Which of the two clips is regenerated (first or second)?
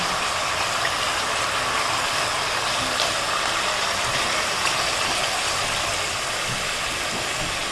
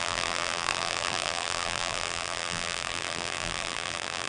second